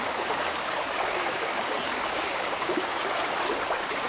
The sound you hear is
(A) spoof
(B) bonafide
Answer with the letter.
A